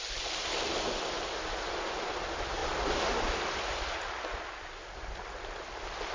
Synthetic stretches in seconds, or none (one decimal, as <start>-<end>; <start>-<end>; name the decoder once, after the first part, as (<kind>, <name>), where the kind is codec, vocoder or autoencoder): none